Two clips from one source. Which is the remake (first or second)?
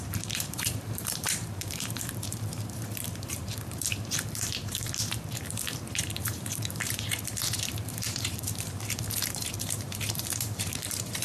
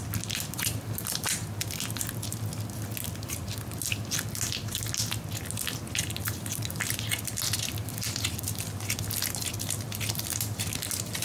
first